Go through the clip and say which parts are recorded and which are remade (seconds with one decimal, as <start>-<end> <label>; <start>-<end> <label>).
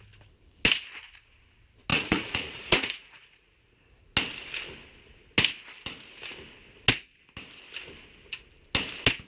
0.0-1.9 recorded; 1.9-4.0 remade; 4.0-9.3 recorded